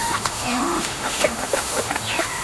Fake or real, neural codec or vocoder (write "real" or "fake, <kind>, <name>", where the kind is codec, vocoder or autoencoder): fake, autoencoder, DAC-VAE